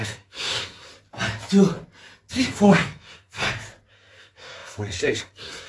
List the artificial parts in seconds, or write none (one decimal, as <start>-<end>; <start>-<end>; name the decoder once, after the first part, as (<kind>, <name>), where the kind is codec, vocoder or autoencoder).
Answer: 0.0-0.9 (codec, SNAC); 2.3-3.4; 3.9-5.7